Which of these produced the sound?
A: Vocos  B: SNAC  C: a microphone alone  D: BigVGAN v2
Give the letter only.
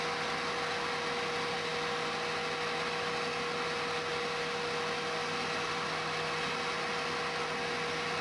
C